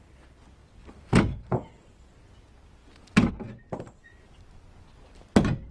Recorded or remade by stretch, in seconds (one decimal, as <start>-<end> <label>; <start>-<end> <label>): 0.0-0.8 recorded; 0.8-2.1 remade; 2.1-5.7 recorded